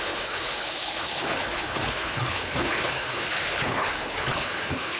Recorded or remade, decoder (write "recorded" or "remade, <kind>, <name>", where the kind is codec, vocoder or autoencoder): remade, codec, HILCodec